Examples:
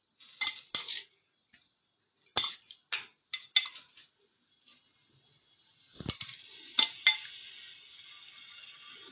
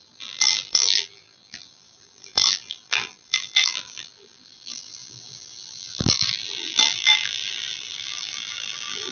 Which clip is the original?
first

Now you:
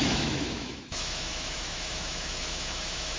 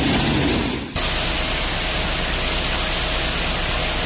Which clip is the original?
second